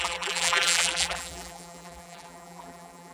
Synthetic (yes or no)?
yes